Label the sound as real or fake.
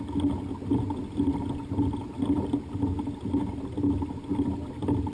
real